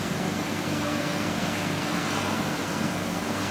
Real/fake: fake